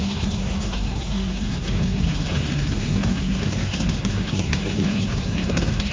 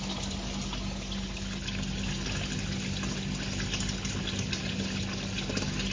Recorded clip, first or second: second